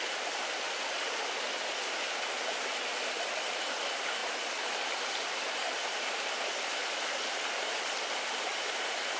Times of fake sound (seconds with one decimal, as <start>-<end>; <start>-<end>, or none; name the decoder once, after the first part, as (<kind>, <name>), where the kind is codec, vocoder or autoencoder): none